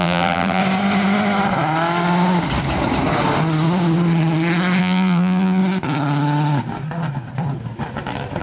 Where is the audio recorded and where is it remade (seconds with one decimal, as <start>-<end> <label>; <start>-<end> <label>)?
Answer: 0.0-0.6 remade; 0.6-4.8 recorded; 4.8-5.6 remade; 5.6-8.4 recorded